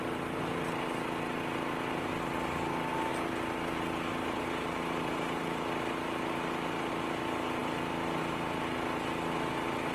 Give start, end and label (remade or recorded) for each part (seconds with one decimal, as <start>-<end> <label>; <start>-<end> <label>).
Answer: 0.0-9.9 recorded